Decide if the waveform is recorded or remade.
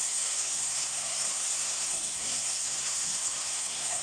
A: remade